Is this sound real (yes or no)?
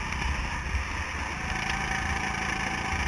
yes